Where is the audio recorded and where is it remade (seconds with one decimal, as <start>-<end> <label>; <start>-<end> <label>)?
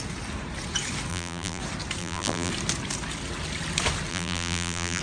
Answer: 0.0-1.1 recorded; 1.1-1.6 remade; 1.6-2.0 recorded; 2.0-2.5 remade; 2.5-4.1 recorded; 4.1-5.0 remade